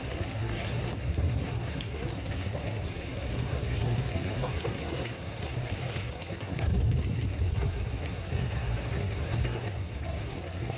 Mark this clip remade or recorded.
remade